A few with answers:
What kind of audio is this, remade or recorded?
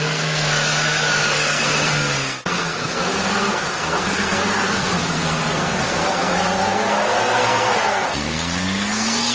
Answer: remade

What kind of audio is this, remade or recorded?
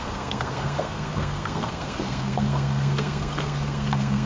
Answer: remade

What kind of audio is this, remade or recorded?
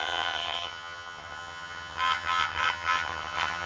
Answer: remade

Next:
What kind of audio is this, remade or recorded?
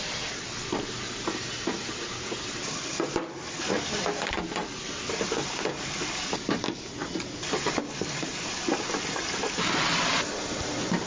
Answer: recorded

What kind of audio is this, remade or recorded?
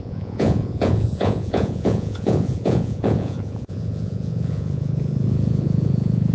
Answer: remade